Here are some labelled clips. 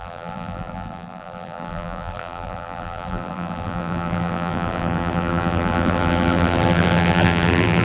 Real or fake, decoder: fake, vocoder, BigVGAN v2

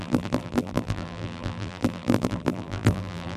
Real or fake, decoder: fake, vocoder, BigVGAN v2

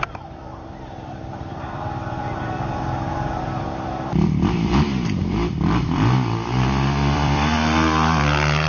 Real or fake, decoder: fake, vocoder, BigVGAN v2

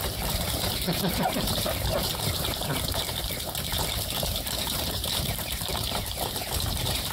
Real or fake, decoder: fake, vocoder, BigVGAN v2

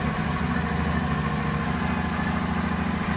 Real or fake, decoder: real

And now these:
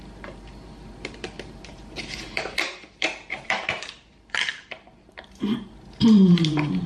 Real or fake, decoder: fake, vocoder, BigVGAN v2